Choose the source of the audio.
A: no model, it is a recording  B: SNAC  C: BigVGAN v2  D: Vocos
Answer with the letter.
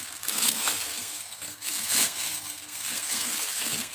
B